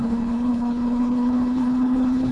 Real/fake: fake